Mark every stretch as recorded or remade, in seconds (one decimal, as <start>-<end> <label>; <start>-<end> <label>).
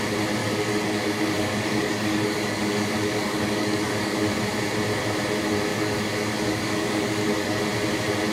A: 0.0-0.4 recorded; 0.4-4.3 remade; 4.3-5.7 recorded; 5.7-7.6 remade; 7.6-8.3 recorded